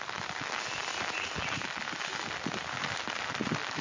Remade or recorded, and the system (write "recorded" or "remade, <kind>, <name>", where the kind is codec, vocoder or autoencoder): recorded